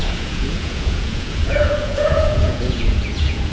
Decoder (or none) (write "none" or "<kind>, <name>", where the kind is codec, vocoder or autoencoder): vocoder, Vocos